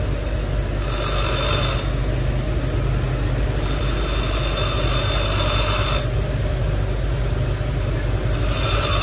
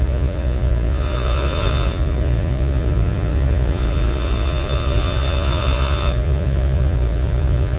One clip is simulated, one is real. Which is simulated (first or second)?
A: second